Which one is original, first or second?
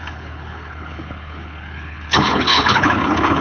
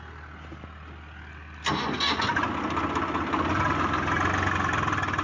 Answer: second